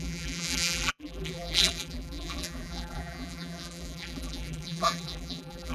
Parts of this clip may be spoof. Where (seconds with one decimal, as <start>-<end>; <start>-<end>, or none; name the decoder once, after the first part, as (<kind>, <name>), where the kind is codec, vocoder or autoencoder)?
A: 0.0-5.7 (vocoder, BigVGAN v2)